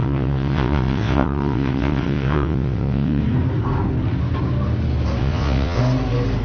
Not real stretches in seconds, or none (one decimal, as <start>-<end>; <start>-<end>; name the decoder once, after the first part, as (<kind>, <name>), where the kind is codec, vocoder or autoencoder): 0.0-3.2 (vocoder, WaveNeXt); 5.2-5.8